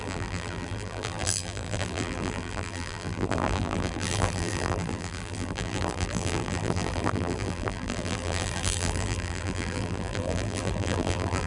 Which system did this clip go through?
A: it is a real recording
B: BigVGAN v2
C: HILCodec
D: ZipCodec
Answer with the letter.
B